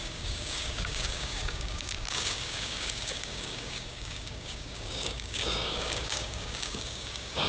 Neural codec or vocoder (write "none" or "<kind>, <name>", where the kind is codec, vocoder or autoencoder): codec, DAC